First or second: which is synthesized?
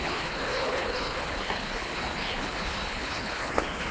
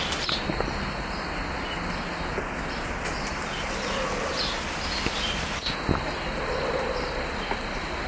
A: first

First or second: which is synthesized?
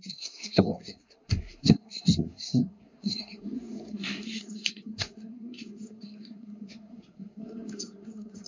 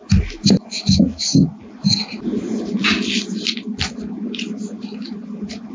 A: first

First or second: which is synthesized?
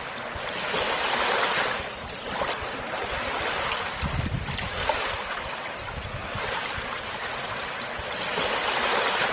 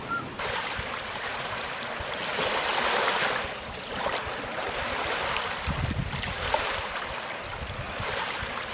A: second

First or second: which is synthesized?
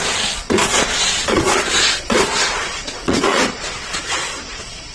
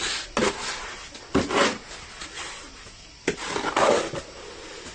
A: first